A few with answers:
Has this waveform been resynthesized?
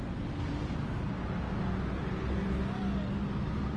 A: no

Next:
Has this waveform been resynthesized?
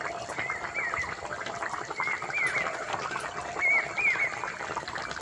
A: no